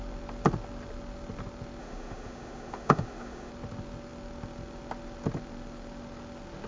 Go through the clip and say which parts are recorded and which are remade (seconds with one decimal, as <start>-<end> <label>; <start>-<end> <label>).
0.0-1.8 recorded; 1.8-3.5 remade; 3.5-6.7 recorded